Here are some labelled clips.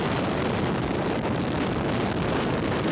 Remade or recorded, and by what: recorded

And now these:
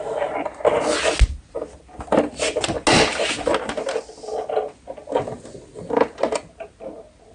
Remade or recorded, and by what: recorded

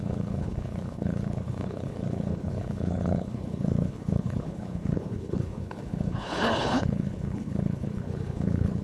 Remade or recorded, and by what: remade, codec, HILCodec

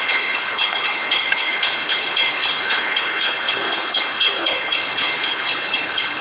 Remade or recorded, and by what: remade, codec, HILCodec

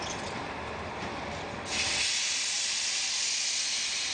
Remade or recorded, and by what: recorded